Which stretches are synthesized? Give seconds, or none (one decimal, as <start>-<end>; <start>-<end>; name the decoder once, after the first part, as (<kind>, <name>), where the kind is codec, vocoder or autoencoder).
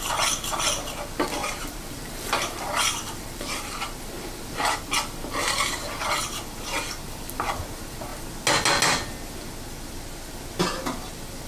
1.4-4.8 (vocoder, BigVGAN v2)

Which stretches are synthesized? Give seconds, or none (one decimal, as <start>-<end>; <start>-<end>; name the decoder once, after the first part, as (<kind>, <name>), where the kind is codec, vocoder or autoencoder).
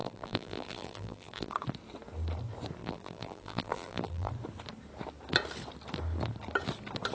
0.0-1.5 (vocoder, BigVGAN v2); 2.8-4.3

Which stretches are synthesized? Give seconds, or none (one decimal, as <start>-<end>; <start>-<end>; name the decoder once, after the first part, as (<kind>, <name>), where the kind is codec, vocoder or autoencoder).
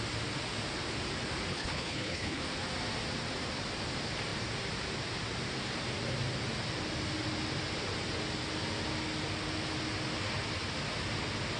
1.5-2.4 (codec, HILCodec)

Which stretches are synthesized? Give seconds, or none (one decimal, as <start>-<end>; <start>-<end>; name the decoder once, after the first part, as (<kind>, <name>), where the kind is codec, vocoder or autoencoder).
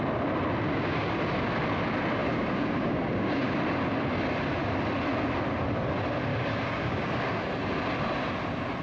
0.7-1.2 (codec, DAC); 2.2-3.6; 6.3-7.2